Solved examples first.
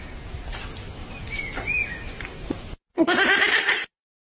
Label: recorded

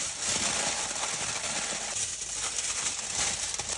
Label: recorded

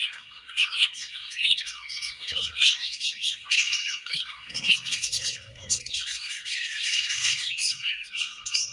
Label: remade